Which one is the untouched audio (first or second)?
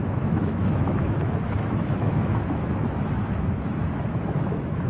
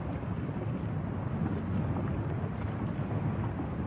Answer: second